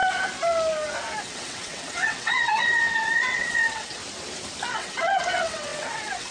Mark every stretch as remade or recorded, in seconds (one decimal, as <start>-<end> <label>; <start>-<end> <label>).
0.0-1.2 recorded; 1.2-4.0 remade; 4.0-4.7 recorded; 4.7-6.3 remade